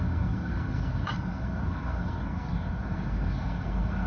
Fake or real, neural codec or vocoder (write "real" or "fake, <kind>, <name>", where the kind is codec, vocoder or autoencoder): fake, codec, SNAC